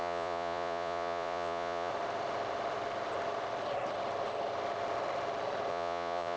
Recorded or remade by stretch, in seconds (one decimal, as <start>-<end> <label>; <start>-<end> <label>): 0.0-1.9 remade; 1.9-5.7 recorded; 5.7-6.4 remade